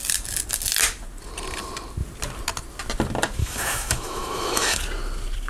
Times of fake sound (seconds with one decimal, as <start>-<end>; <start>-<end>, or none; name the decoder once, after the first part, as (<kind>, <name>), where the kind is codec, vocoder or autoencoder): 3.4-4.8 (autoencoder, DAC-VAE)